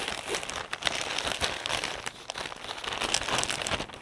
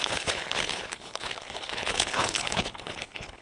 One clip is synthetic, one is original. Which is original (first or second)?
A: first